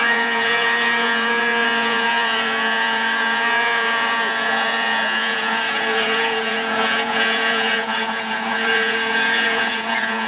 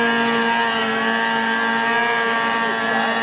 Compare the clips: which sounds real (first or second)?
second